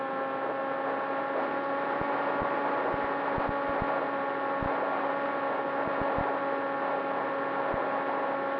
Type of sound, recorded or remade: recorded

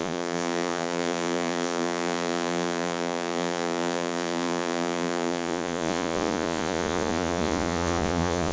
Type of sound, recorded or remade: remade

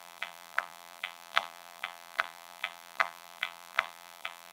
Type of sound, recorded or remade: remade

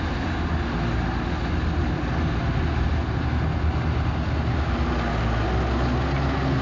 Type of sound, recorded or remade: recorded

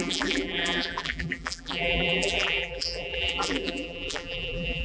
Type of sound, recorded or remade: remade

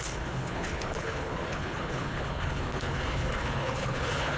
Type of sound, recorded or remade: remade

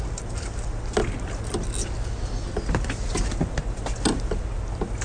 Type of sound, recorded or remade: recorded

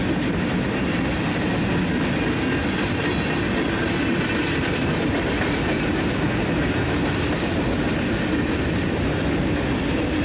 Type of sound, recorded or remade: recorded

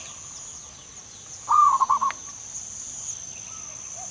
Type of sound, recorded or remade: recorded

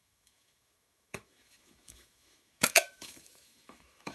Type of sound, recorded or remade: remade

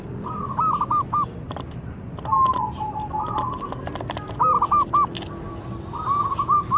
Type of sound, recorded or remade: recorded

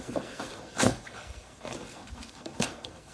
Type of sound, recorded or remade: remade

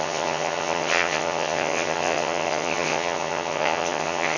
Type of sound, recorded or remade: remade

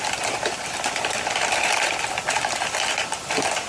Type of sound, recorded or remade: remade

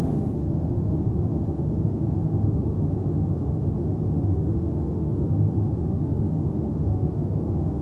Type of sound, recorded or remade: remade